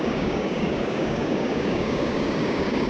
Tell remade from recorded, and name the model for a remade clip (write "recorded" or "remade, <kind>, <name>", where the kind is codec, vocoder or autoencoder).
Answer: remade, codec, DAC